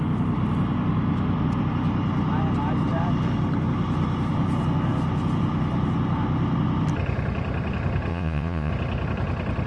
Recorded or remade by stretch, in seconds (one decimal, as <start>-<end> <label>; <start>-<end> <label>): 0.0-8.1 recorded; 8.1-8.7 remade; 8.7-9.7 recorded